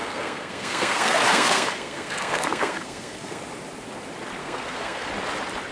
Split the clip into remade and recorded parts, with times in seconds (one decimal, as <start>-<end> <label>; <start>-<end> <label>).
0.0-3.4 remade; 3.4-4.4 recorded; 4.4-5.1 remade; 5.1-5.7 recorded

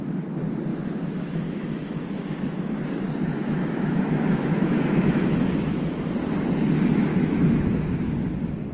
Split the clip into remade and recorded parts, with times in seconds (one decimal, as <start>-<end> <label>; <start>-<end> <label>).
0.0-0.7 recorded; 0.7-2.8 remade; 2.8-3.3 recorded; 3.3-6.1 remade; 6.1-7.1 recorded; 7.1-8.1 remade; 8.1-8.7 recorded

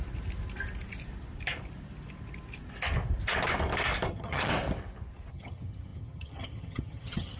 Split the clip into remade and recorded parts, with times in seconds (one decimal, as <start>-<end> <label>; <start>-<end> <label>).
0.0-4.1 recorded; 4.1-4.5 remade; 4.5-5.3 recorded; 5.3-7.4 remade